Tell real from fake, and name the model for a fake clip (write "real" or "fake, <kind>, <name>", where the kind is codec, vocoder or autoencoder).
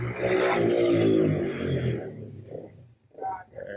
real